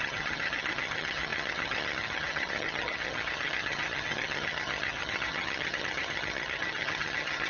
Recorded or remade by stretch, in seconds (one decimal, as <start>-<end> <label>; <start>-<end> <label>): 0.0-7.5 remade